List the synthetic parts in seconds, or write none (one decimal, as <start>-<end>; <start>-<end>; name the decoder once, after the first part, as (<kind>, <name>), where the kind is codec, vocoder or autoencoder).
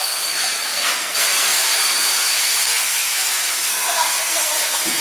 0.0-5.0 (codec, SNAC)